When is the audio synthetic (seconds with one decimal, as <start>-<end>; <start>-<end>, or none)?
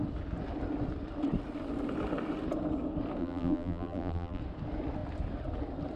3.2-4.4